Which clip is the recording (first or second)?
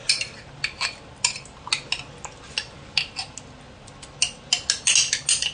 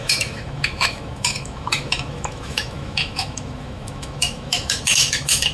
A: first